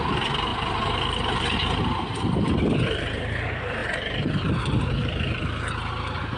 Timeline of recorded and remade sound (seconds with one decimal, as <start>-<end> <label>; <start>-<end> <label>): 0.0-6.4 remade